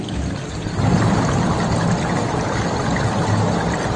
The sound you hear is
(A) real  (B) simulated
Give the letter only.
A